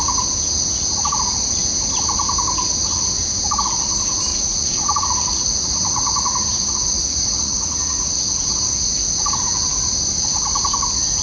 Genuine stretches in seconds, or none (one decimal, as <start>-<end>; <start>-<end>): 0.0-4.3; 8.2-11.2